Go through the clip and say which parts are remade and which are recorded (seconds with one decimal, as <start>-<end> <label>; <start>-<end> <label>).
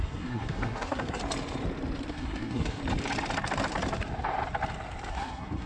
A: 0.0-1.2 remade; 1.2-2.1 recorded; 2.1-2.8 remade; 2.8-5.1 recorded; 5.1-5.7 remade